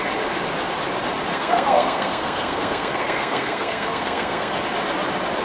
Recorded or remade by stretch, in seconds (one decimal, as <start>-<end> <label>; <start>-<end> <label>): 0.0-1.3 recorded; 1.3-4.5 remade; 4.5-5.4 recorded